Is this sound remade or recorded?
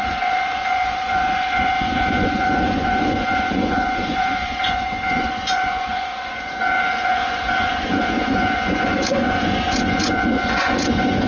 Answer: remade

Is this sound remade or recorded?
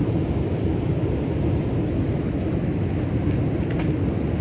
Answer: recorded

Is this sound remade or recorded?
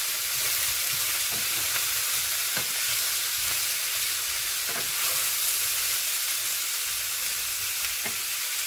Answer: recorded